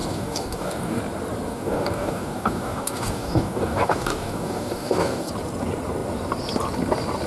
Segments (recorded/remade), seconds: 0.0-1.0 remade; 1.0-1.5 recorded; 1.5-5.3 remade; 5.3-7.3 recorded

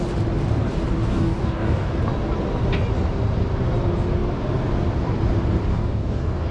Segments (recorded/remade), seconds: 0.0-1.1 recorded; 1.1-1.9 remade; 1.9-5.7 recorded; 5.7-6.5 remade

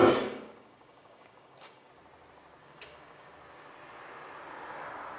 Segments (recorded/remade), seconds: 0.0-1.9 remade; 1.9-2.6 recorded; 2.6-3.3 remade; 3.3-5.2 recorded

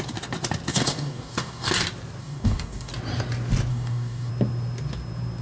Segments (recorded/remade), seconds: 0.0-0.7 recorded; 0.7-1.7 remade; 1.7-2.2 recorded; 2.2-2.9 remade; 2.9-3.7 recorded; 3.7-4.3 remade; 4.3-5.4 recorded

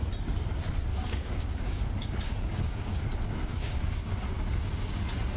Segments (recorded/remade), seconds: 0.0-0.9 recorded; 0.9-3.0 remade; 3.0-3.5 recorded; 3.5-5.0 remade; 5.0-5.4 recorded

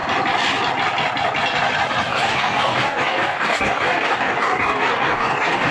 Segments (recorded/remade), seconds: 0.0-2.1 recorded; 2.1-5.7 remade

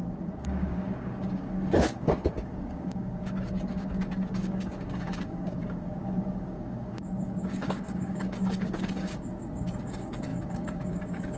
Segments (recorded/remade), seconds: 0.0-11.4 remade

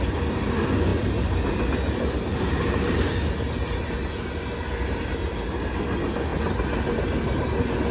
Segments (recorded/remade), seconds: 0.0-7.9 recorded